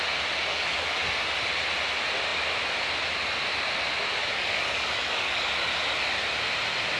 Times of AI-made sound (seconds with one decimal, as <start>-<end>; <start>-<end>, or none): 0.5-1.0; 4.2-5.7